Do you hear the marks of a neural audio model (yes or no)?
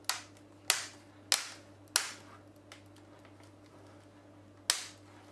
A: no